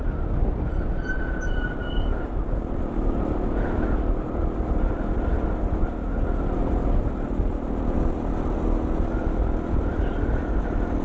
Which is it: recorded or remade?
recorded